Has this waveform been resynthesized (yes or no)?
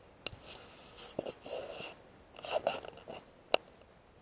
no